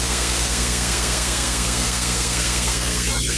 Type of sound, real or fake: fake